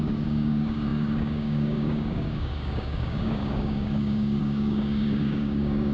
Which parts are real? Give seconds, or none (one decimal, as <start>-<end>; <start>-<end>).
none